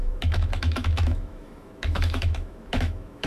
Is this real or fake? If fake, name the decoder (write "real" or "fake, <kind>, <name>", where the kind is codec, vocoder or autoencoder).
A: fake, autoencoder, DAC-VAE